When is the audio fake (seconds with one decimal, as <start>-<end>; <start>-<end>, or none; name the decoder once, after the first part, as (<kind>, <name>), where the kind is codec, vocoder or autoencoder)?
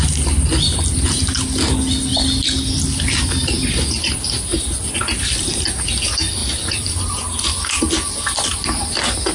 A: 6.4-7.5 (vocoder, BigVGAN v2)